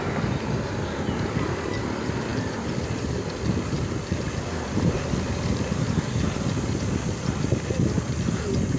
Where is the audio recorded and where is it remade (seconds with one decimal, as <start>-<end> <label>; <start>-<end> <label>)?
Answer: 0.0-2.3 recorded; 2.3-6.4 remade; 6.4-8.8 recorded